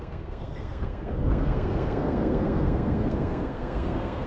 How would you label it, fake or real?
fake